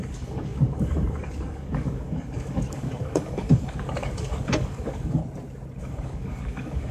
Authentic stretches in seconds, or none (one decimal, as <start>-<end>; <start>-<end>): 5.2-5.8